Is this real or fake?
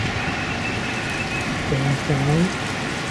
real